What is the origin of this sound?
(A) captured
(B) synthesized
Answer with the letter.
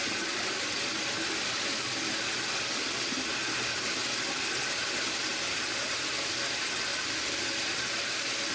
A